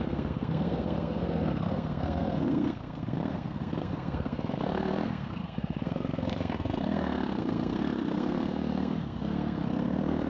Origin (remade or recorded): remade